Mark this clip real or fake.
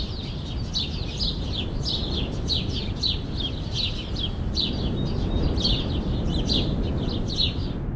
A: real